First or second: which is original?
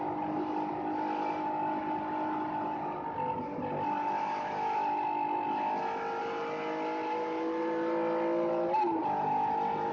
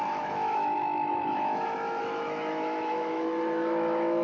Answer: first